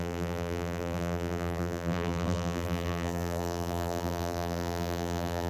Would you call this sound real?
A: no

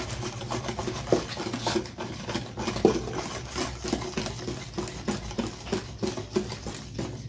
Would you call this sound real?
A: yes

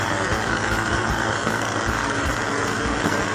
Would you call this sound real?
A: no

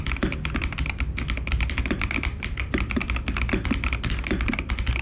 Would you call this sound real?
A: yes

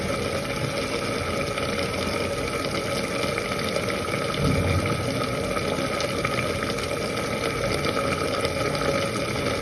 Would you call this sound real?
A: yes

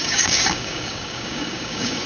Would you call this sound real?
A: no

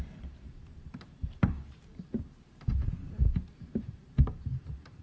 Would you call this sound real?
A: no